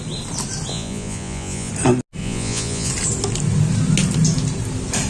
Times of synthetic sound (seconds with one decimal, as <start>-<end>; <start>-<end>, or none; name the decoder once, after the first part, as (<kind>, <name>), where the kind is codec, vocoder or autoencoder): 0.7-1.7 (vocoder, Vocos); 2.2-2.9